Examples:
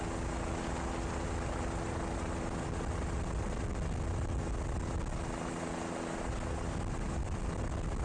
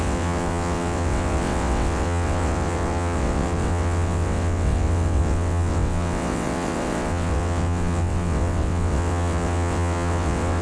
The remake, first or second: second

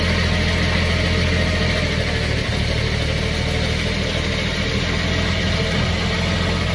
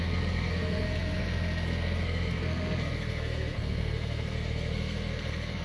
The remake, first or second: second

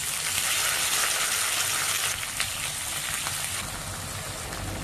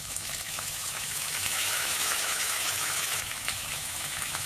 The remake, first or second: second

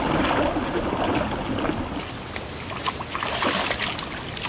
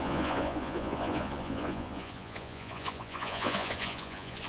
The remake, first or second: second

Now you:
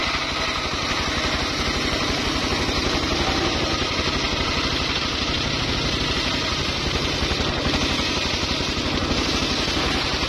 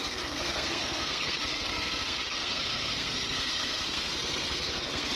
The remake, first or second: second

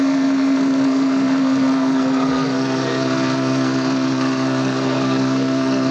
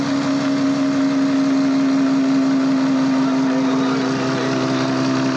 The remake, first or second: first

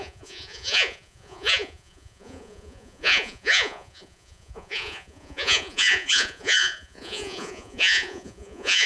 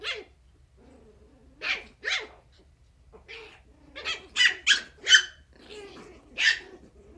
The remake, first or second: first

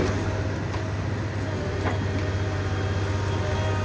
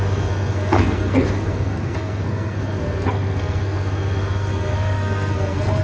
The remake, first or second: second